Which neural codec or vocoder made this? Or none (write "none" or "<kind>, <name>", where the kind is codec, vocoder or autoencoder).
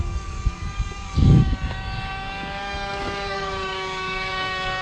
codec, DAC